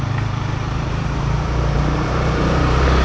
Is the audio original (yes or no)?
no